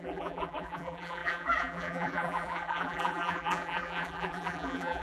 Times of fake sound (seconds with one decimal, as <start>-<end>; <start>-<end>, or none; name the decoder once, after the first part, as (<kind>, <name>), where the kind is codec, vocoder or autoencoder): 0.0-5.0 (vocoder, BigVGAN v2)